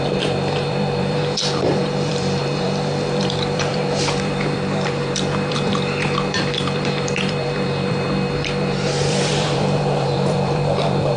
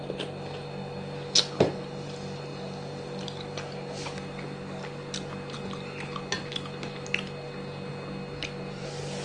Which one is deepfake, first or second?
first